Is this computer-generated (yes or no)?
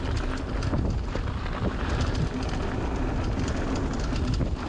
no